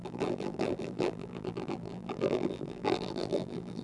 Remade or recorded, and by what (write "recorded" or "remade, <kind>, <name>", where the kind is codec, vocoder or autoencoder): remade, vocoder, BigVGAN v2